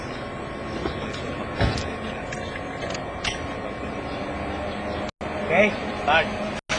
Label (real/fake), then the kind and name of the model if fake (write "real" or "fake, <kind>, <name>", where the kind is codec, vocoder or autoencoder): real